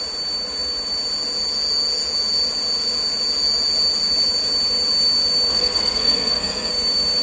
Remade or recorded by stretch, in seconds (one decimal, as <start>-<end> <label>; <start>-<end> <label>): 0.0-5.5 recorded; 5.5-6.7 remade; 6.7-7.2 recorded